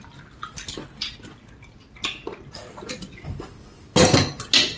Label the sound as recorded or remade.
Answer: recorded